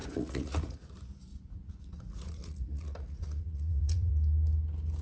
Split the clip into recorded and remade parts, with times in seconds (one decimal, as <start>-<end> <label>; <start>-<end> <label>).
0.0-0.9 remade; 0.9-1.3 recorded; 1.3-4.1 remade; 4.1-5.0 recorded